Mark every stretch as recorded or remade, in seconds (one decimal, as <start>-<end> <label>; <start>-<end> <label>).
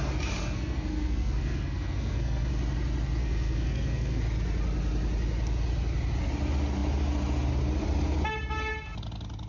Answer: 0.0-0.4 recorded; 0.4-2.5 remade; 2.5-3.2 recorded; 3.2-4.2 remade; 4.2-9.5 recorded